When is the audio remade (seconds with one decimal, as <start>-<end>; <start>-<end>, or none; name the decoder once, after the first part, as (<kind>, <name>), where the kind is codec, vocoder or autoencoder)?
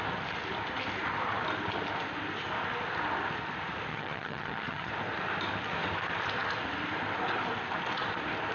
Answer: 3.9-4.9 (vocoder, HiFi-GAN)